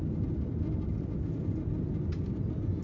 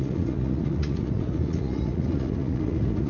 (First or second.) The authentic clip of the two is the first